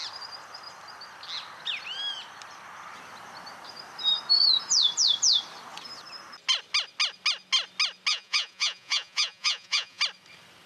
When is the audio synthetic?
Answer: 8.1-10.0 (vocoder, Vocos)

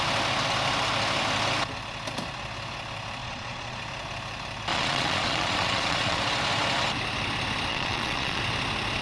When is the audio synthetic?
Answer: 3.2-3.8 (vocoder, Vocos); 4.7-6.2; 7.7-8.4